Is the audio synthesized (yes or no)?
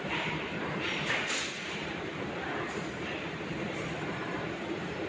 yes